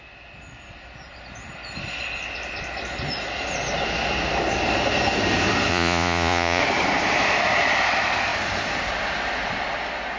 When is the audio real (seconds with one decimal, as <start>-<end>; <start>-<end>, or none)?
0.0-5.7; 6.6-10.2